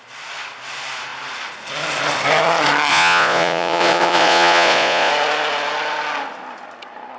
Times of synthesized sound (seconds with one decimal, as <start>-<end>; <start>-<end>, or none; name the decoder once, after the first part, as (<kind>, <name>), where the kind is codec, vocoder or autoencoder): 2.9-5.1 (vocoder, Vocos)